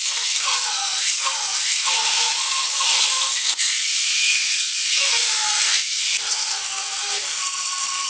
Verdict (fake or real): fake